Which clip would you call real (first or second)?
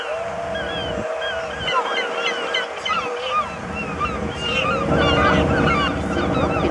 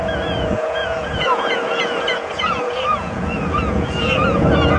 first